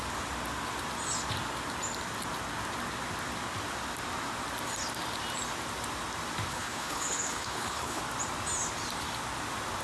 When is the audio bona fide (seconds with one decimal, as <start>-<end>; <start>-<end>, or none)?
0.0-6.5; 8.0-9.8